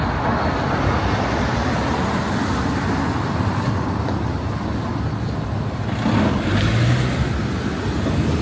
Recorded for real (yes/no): yes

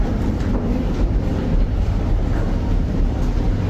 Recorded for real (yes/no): yes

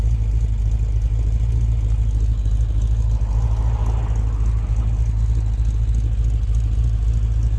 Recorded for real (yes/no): yes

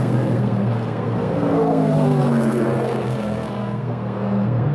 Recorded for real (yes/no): no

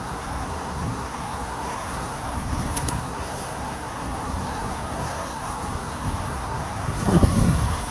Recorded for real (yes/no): no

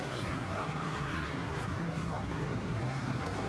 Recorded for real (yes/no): no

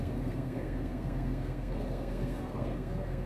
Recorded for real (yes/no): no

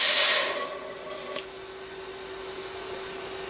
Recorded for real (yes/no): yes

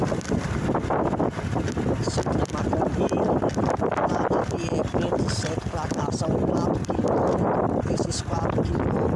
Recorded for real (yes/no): yes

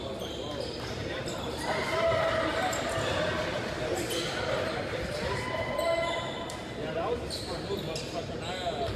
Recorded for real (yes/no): yes